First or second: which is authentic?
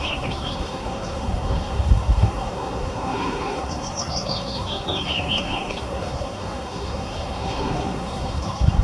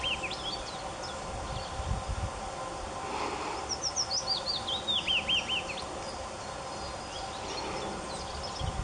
second